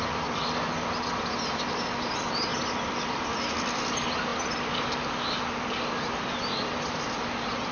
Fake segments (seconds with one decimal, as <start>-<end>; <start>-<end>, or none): none